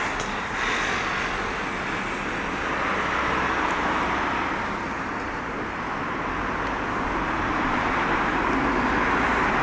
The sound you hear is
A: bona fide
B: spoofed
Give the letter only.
A